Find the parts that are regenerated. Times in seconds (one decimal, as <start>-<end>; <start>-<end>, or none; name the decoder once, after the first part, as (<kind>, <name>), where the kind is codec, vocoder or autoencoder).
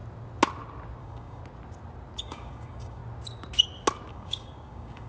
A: 1.0-1.4 (codec, DAC); 2.2-3.0; 4.1-5.1